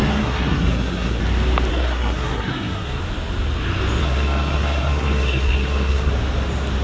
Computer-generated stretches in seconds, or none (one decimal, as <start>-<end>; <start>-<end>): 0.0-1.2; 1.7-3.0; 4.0-6.1